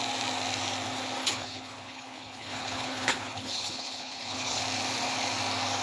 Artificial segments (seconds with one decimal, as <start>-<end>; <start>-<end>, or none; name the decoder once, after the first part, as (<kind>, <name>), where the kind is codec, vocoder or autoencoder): 1.2-4.6 (codec, HILCodec)